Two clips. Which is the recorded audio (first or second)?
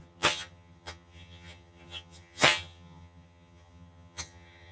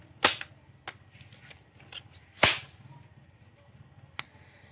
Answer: second